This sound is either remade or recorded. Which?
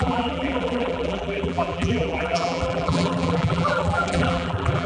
remade